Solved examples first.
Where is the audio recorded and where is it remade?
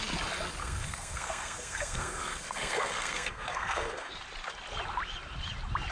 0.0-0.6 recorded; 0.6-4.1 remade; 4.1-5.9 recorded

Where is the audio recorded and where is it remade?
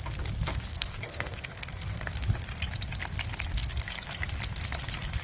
0.0-0.7 recorded; 0.7-2.1 remade; 2.1-5.2 recorded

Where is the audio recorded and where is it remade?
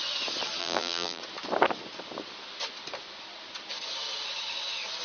0.0-0.6 recorded; 0.6-1.2 remade; 1.2-5.0 recorded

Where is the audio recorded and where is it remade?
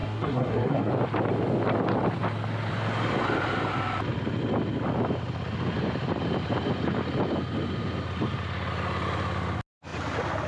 0.0-0.9 remade; 0.9-10.5 recorded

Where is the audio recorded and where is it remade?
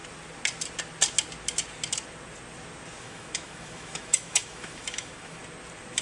0.0-3.0 recorded; 3.0-5.4 remade; 5.4-6.0 recorded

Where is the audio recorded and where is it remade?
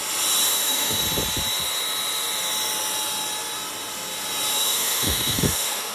0.0-0.5 recorded; 0.5-1.0 remade; 1.0-4.5 recorded; 4.5-5.9 remade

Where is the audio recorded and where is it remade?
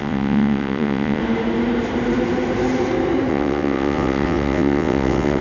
0.0-1.2 remade; 1.2-3.3 recorded; 3.3-5.4 remade